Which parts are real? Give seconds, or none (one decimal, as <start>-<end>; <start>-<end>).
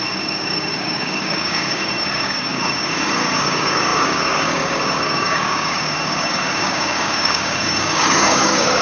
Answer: none